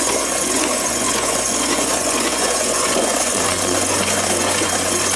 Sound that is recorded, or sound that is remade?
remade